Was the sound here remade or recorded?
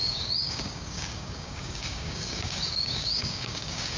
remade